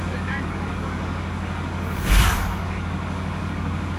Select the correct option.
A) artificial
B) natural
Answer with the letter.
A